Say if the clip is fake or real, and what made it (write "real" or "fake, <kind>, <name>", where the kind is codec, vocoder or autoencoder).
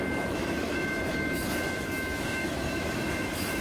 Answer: fake, autoencoder, DAC-VAE